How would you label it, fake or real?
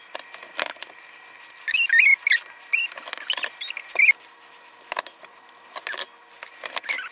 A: real